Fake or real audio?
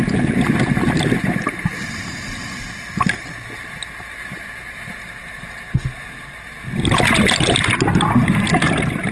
real